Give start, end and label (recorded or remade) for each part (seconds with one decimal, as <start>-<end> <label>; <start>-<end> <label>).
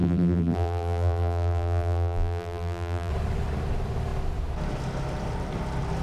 0.0-3.1 remade; 3.1-6.0 recorded